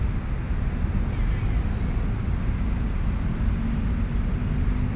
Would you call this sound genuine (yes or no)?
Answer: yes